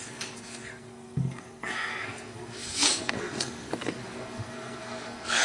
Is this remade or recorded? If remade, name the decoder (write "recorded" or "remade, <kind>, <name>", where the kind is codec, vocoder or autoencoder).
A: remade, codec, SNAC